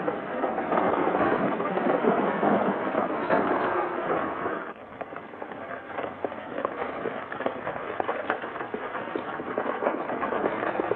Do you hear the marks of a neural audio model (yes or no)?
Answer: yes